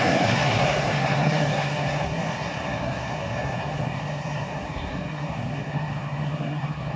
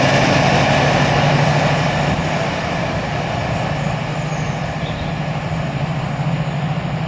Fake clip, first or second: first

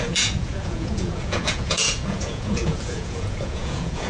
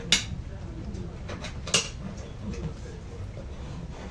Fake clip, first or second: first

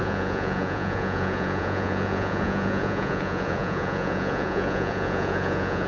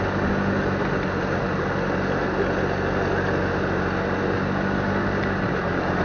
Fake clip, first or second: first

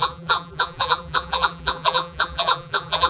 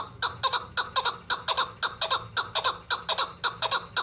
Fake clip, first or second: first